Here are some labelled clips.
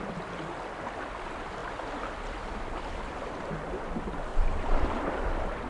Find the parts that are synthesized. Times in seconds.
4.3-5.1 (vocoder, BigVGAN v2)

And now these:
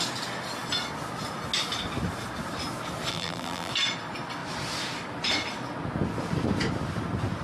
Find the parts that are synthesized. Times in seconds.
3.1-3.7 (vocoder, BigVGAN v2)